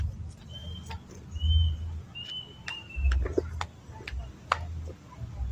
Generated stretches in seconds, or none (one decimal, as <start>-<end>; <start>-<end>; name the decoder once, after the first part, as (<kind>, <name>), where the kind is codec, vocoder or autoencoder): none